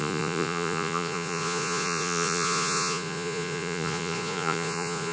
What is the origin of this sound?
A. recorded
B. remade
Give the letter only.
B